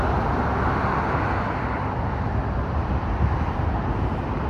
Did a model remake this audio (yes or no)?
no